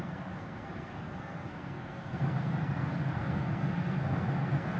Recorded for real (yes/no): no